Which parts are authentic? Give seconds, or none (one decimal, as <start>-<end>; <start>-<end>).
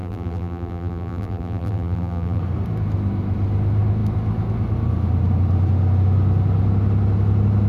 2.4-7.7